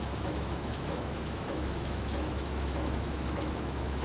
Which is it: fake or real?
fake